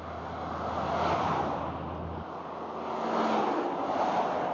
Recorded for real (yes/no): yes